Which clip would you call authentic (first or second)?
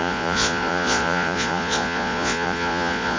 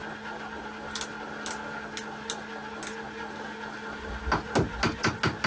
second